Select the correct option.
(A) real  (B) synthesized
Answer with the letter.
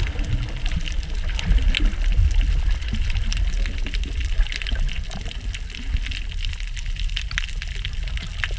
A